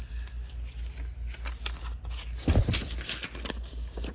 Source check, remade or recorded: recorded